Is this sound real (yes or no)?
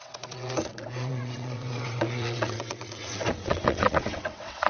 no